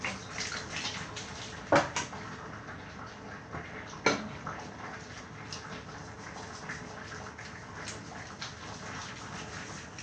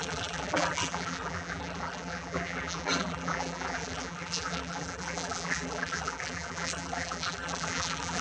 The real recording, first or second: first